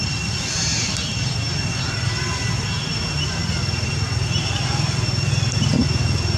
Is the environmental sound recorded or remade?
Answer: recorded